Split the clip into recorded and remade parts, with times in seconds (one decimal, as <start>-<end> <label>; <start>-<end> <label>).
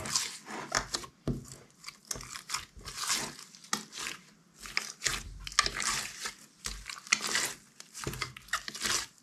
0.0-9.2 recorded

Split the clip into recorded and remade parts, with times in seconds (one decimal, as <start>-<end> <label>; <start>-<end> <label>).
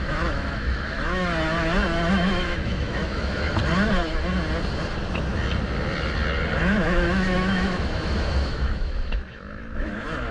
0.0-1.3 remade; 1.3-2.1 recorded; 2.1-3.6 remade; 3.6-6.6 recorded; 6.6-10.3 remade